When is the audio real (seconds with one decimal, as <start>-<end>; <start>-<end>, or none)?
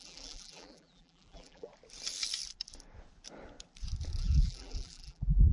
1.7-4.2